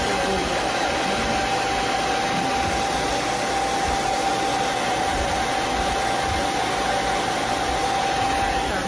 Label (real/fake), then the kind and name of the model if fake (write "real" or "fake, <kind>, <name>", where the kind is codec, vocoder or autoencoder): real